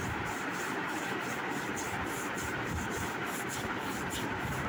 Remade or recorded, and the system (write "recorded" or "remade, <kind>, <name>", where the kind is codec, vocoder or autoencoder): remade, vocoder, BigVGAN v2